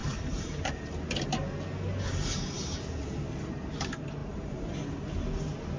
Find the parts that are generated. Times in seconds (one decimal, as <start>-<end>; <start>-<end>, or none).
0.0-0.8; 1.9-3.7; 4.2-4.8